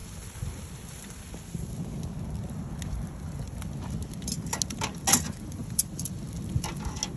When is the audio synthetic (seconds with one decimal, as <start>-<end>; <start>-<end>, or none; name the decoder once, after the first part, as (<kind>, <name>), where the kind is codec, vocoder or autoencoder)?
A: 0.0-1.3 (vocoder, BigVGAN v2); 5.6-6.7